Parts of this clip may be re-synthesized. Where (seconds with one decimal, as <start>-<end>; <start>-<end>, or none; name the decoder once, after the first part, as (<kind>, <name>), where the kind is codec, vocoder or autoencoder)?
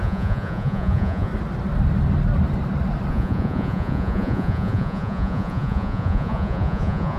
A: 0.0-1.3 (vocoder, Vocos); 3.1-7.2